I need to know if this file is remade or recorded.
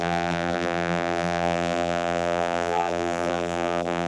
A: remade